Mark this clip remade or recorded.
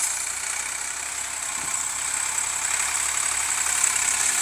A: recorded